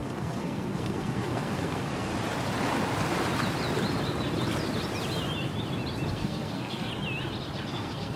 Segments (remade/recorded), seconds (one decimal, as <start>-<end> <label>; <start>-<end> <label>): 0.0-2.1 remade; 2.1-6.1 recorded; 6.1-6.9 remade; 6.9-7.7 recorded; 7.7-8.2 remade